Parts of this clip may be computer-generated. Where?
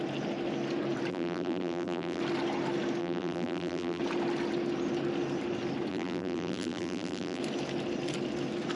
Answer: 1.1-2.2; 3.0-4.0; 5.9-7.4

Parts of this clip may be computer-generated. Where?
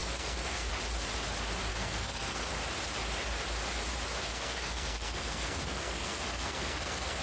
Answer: 0.0-0.7; 1.7-2.5; 4.3-7.2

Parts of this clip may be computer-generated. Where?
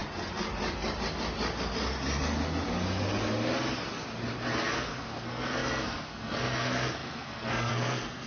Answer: 4.6-8.3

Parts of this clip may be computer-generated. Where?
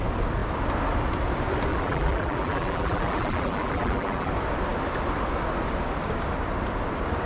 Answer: 1.7-4.3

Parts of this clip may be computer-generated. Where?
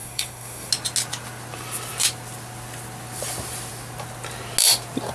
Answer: 0.0-0.7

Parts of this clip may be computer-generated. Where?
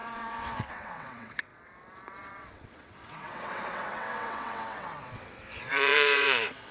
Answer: 0.0-6.7